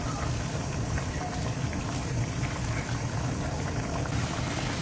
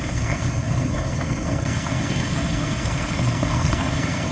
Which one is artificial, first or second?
second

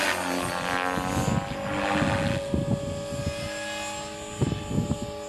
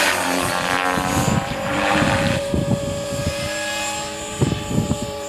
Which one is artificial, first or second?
second